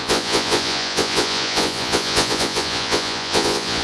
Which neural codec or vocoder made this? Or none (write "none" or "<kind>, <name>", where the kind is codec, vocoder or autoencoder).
vocoder, Vocos